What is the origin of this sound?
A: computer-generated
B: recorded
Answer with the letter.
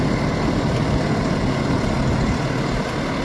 B